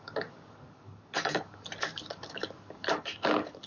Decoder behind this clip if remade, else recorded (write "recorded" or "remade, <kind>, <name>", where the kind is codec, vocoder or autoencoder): remade, codec, DAC